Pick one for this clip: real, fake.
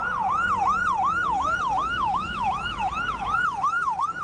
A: fake